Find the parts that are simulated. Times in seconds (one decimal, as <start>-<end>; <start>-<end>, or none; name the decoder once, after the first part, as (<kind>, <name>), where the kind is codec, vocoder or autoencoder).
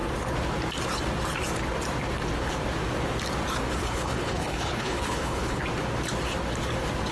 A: 3.7-5.6 (codec, HILCodec)